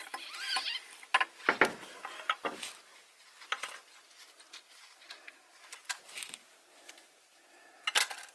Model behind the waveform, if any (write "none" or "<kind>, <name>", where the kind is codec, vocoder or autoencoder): none